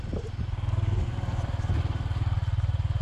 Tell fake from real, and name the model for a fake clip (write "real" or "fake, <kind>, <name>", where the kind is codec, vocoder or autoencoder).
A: real